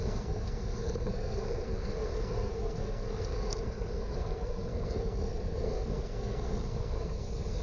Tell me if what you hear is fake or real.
fake